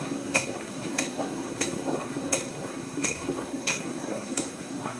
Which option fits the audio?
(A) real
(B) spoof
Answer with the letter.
B